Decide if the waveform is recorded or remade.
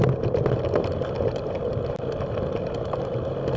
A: recorded